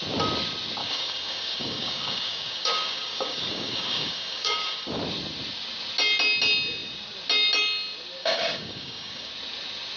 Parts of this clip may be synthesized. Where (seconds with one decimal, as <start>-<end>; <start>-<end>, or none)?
0.8-5.0; 8.2-9.3